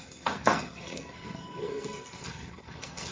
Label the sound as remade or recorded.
remade